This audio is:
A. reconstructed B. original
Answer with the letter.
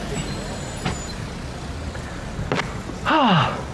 B